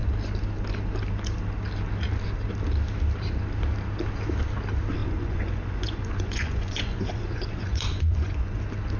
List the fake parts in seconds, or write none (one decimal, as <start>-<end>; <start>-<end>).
5.0-8.6